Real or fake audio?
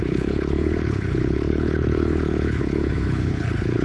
fake